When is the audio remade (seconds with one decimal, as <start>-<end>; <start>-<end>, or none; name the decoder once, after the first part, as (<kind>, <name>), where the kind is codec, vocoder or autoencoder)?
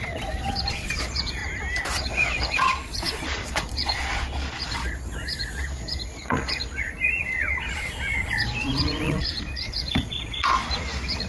0.0-1.4 (vocoder, Vocos); 2.0-11.3